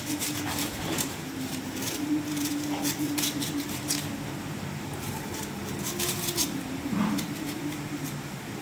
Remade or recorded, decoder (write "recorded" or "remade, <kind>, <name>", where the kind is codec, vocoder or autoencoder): remade, vocoder, BigVGAN v2